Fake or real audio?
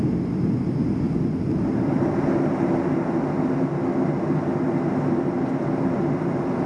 real